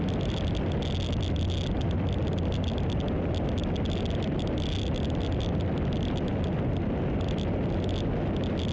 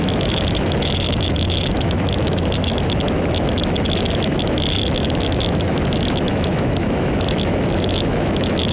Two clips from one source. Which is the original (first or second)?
first